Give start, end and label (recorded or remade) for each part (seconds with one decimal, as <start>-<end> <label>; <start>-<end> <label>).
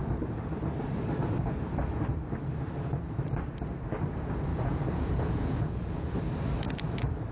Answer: 0.0-4.5 recorded; 4.5-6.2 remade; 6.2-7.3 recorded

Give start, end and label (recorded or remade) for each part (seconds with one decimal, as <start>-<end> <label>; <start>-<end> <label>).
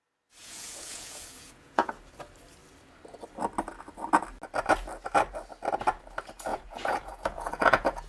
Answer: 0.0-0.4 recorded; 0.4-1.9 remade; 1.9-6.5 recorded; 6.5-8.1 remade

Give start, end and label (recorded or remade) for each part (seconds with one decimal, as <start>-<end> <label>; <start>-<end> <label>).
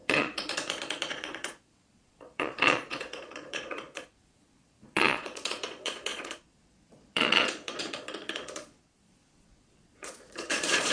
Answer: 0.0-10.9 remade